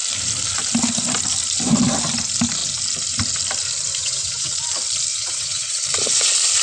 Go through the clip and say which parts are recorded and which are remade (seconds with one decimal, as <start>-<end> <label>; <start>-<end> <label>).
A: 0.0-4.0 recorded; 4.0-4.5 remade; 4.5-5.1 recorded; 5.1-5.8 remade; 5.8-6.6 recorded